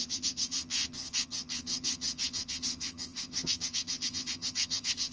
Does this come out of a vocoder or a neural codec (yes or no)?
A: yes